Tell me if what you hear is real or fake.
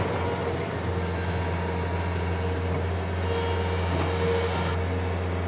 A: real